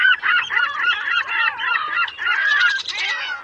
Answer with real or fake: fake